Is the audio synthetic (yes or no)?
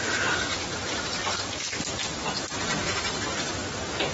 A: no